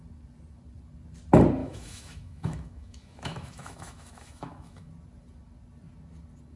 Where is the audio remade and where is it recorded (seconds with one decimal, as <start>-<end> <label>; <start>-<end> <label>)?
0.0-1.6 recorded; 1.6-4.9 remade; 4.9-6.6 recorded

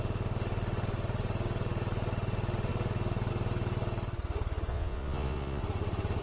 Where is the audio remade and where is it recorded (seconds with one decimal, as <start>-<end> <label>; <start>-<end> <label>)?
0.0-4.7 recorded; 4.7-5.6 remade; 5.6-6.2 recorded

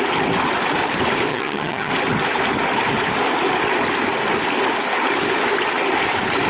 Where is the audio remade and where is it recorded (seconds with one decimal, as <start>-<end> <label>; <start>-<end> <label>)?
0.0-1.3 recorded; 1.3-1.9 remade; 1.9-6.5 recorded

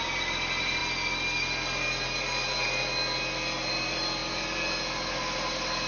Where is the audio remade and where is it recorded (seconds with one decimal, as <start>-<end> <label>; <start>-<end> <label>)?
0.0-0.8 remade; 0.8-3.7 recorded; 3.7-4.2 remade; 4.2-5.1 recorded; 5.1-5.9 remade

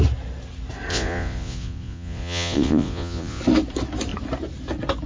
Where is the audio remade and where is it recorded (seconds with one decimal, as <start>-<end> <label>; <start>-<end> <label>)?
0.0-0.9 recorded; 0.9-3.4 remade; 3.4-5.1 recorded